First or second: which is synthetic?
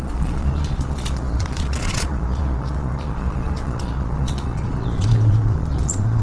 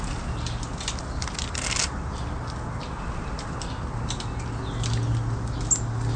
first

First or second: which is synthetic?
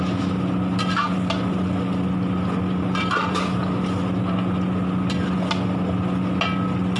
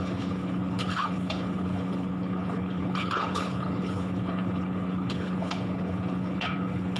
second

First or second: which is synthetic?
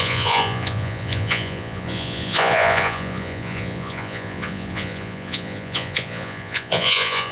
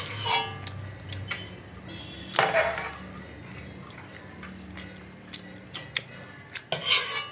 first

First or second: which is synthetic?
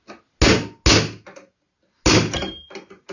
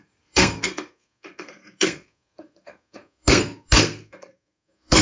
second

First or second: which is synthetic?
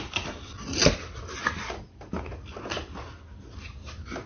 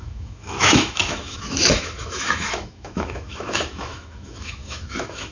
second